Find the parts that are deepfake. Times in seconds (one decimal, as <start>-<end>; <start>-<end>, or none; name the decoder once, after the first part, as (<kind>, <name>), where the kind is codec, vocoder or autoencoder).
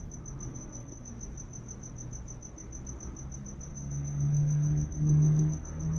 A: 0.5-1.0 (codec, SNAC); 3.7-6.0